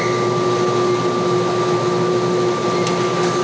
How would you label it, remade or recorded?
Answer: recorded